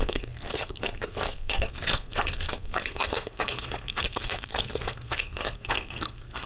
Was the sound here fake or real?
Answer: fake